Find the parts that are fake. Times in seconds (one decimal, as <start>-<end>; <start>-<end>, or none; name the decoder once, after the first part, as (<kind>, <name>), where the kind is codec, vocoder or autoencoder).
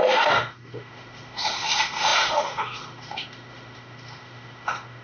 0.0-5.0 (autoencoder, DAC-VAE)